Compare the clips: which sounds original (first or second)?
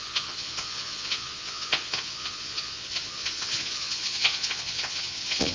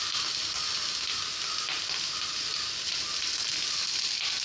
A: second